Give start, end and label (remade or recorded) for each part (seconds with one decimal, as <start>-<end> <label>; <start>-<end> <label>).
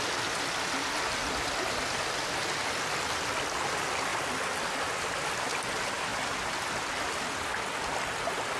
0.0-8.6 recorded